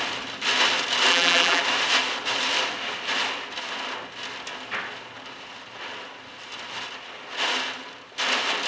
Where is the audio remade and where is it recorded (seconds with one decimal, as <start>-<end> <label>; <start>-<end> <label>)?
0.0-1.1 recorded; 1.1-1.6 remade; 1.6-8.7 recorded